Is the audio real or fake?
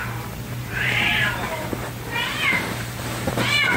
fake